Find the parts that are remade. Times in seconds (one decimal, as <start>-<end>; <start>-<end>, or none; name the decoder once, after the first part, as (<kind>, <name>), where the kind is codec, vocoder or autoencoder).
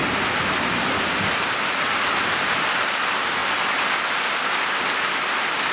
0.0-3.4 (vocoder, BigVGAN v2); 4.4-5.7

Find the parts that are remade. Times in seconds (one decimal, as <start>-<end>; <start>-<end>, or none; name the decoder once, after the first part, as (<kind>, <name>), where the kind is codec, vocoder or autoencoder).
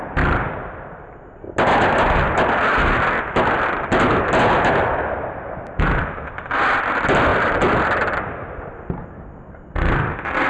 7.3-9.7 (vocoder, BigVGAN v2)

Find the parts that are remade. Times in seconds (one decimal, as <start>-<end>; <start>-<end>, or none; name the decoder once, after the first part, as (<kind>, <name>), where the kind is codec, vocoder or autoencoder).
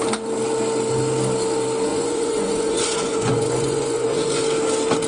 1.9-4.4 (vocoder, Vocos)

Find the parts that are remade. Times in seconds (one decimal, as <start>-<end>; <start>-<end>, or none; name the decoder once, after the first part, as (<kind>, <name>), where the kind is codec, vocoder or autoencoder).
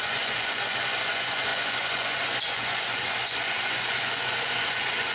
0.0-5.1 (vocoder, Vocos)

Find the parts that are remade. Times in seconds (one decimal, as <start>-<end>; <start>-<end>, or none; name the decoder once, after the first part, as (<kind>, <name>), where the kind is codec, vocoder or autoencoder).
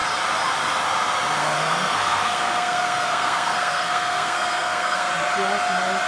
1.4-5.1 (codec, SNAC)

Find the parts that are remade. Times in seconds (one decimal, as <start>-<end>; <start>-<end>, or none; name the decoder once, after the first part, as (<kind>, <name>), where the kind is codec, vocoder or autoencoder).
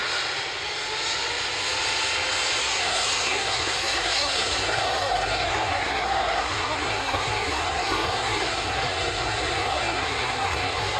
2.6-11.0 (codec, SNAC)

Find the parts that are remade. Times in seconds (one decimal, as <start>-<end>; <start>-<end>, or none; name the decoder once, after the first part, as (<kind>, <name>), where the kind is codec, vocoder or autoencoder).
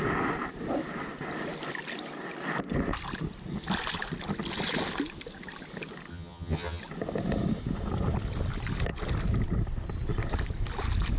6.1-6.8 (vocoder, HiFi-GAN)